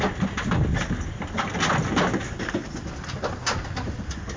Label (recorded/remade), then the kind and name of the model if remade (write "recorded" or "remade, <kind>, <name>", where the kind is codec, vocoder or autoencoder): recorded